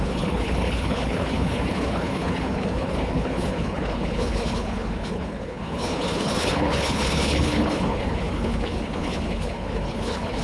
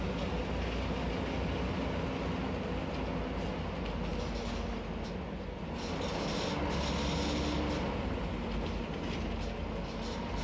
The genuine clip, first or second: second